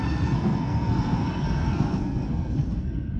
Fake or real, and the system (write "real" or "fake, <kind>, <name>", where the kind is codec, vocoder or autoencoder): fake, codec, SNAC